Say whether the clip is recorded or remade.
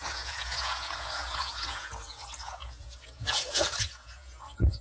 remade